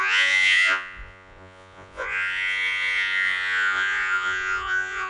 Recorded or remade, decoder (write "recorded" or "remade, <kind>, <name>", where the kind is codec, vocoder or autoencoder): remade, vocoder, Vocos